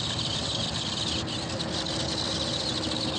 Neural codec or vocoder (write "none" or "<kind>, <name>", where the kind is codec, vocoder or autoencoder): none